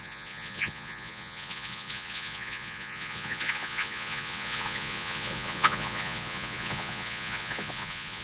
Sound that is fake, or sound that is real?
fake